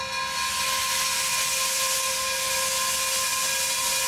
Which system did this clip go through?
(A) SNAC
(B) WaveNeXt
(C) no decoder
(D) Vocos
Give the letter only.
C